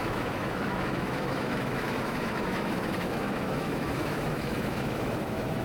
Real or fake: fake